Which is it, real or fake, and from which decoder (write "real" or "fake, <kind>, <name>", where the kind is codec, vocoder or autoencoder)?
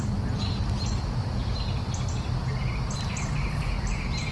real